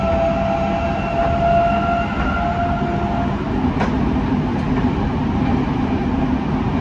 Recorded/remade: recorded